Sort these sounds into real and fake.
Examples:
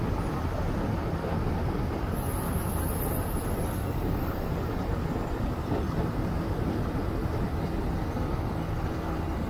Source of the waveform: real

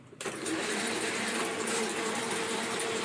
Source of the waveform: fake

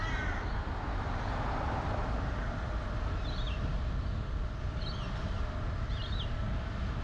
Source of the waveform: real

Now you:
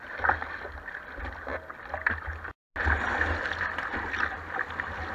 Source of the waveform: real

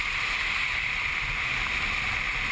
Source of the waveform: fake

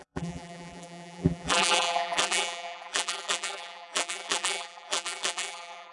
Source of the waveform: fake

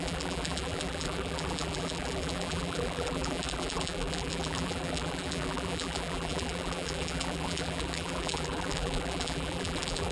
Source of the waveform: fake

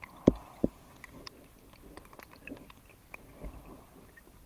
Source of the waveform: fake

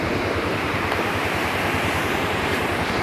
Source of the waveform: fake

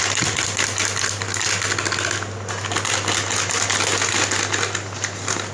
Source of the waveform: real